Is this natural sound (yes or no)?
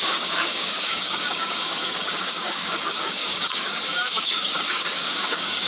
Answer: no